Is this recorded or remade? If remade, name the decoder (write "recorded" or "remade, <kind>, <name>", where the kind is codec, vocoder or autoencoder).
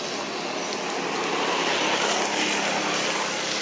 recorded